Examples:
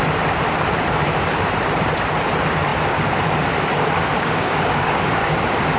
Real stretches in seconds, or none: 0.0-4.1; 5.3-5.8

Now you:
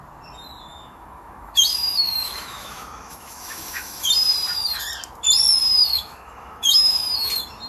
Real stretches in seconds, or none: 0.0-0.7; 4.1-5.9; 7.3-7.7

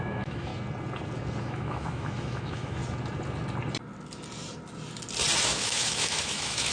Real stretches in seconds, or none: 0.5-1.4; 2.8-5.4

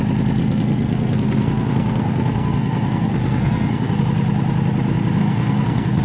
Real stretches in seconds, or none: 0.0-0.4; 4.0-5.2

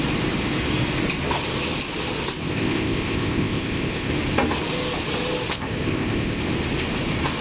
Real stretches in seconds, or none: 0.0-2.5; 4.1-5.5; 6.4-7.4